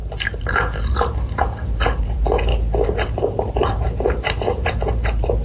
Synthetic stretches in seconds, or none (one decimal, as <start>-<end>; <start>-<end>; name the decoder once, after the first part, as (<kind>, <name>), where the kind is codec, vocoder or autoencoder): 0.0-2.5 (vocoder, BigVGAN v2); 3.5-5.4